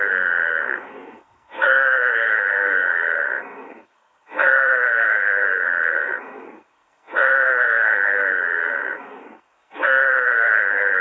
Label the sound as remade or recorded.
remade